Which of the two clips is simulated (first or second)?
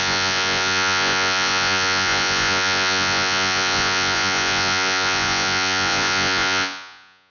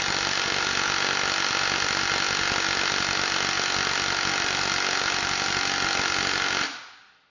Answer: first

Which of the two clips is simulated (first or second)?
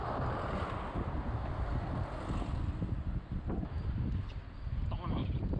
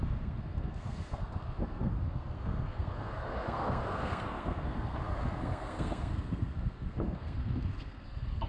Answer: second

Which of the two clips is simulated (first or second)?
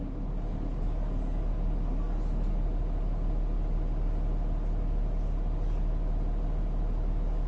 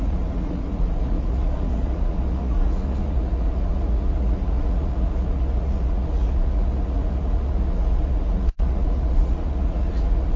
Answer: second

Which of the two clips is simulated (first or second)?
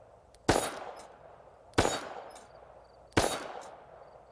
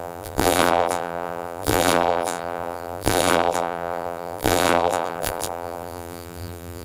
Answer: second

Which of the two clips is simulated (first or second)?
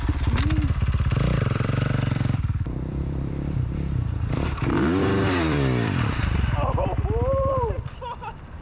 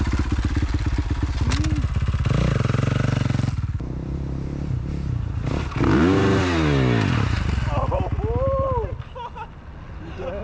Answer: first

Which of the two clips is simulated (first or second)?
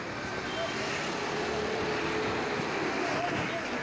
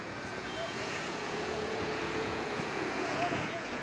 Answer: second